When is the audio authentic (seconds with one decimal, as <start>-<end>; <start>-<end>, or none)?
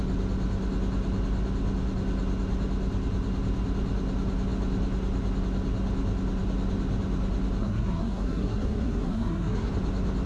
0.0-7.6; 9.7-10.3